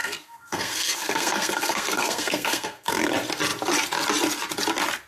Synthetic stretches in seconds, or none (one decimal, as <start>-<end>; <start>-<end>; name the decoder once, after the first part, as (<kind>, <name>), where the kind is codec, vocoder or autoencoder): 0.0-3.1 (codec, SNAC)